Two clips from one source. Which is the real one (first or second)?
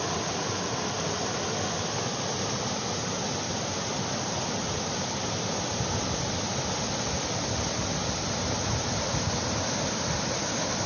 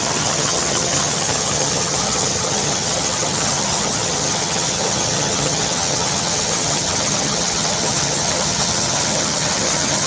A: first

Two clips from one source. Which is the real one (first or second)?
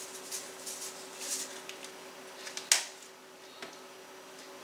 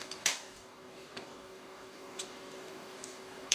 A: first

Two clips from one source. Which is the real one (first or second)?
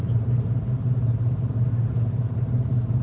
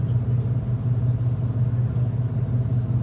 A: second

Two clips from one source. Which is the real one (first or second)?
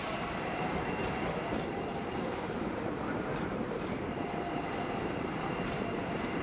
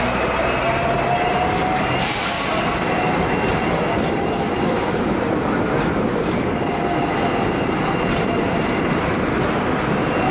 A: second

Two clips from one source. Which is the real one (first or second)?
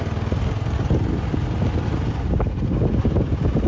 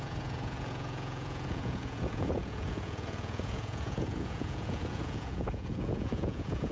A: first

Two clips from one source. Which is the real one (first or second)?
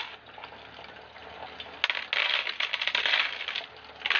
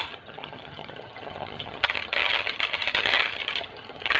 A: first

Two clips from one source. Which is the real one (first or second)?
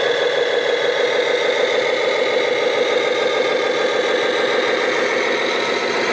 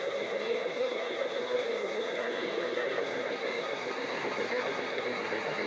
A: first